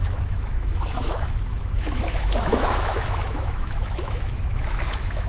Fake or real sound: fake